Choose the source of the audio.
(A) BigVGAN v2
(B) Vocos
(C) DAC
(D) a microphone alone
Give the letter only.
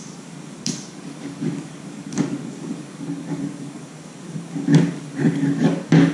C